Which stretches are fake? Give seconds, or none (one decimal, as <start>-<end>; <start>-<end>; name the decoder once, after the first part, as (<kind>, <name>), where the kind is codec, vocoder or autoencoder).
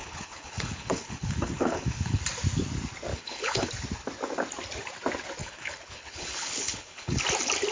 0.0-2.2 (codec, HILCodec); 3.1-3.7; 5.4-7.2